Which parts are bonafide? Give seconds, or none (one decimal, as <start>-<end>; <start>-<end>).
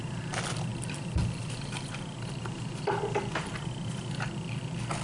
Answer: 0.0-5.0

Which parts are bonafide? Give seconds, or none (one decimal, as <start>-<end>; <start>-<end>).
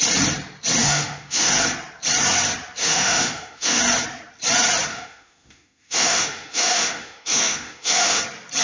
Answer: 0.0-0.8; 1.5-2.8; 3.8-4.9; 8.2-8.6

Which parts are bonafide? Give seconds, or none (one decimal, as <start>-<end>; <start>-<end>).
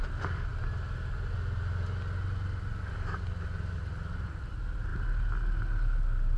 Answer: 0.0-6.4